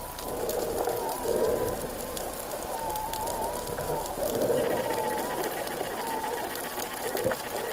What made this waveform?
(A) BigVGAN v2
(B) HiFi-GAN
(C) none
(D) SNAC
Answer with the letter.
C